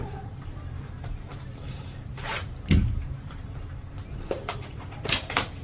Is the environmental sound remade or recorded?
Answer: remade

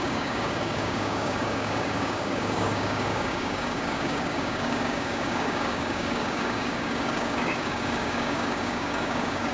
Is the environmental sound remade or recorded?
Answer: remade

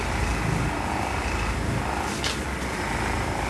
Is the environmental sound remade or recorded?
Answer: recorded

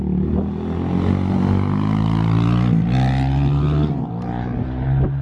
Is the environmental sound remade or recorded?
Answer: recorded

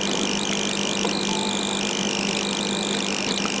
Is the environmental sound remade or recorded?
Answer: recorded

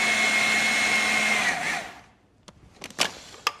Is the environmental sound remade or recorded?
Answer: recorded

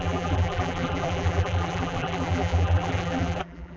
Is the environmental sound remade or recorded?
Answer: remade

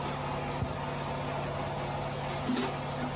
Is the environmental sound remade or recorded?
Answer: recorded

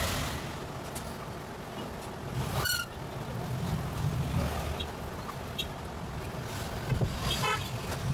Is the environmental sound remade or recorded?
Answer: recorded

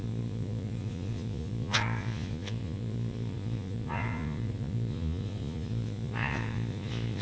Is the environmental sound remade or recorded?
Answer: remade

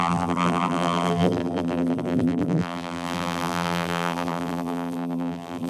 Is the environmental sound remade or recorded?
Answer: remade